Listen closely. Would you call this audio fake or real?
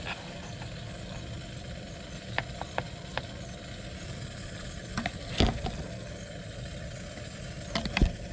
real